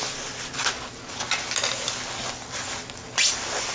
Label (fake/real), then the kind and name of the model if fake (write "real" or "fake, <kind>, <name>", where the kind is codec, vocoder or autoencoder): real